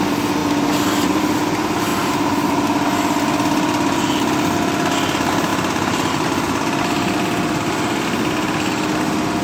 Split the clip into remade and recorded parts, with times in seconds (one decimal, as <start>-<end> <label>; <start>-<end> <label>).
0.0-0.4 recorded; 0.4-1.2 remade; 1.2-5.5 recorded; 5.5-6.1 remade; 6.1-9.4 recorded